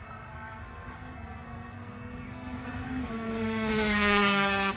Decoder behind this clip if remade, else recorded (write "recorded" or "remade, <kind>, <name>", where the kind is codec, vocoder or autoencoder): remade, codec, SNAC